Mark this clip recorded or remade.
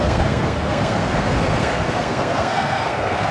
remade